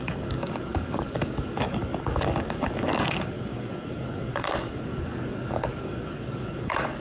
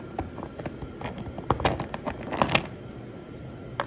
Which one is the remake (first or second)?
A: first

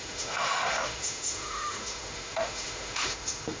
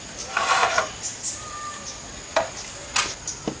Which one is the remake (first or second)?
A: first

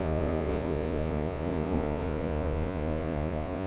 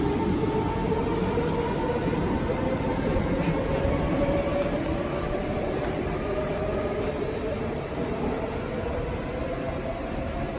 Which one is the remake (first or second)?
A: first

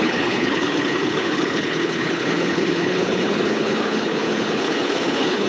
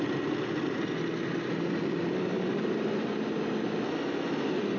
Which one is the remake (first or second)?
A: first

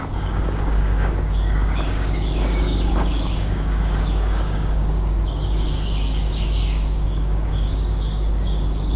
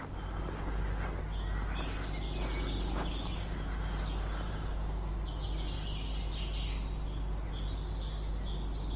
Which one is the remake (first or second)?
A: first